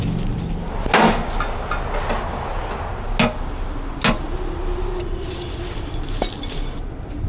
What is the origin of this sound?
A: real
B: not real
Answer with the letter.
A